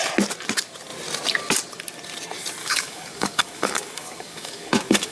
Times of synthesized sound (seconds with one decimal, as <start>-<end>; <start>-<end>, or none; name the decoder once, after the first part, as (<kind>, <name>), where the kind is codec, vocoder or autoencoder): 2.6-5.1 (codec, DAC)